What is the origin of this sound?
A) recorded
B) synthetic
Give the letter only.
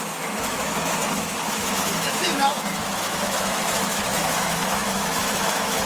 B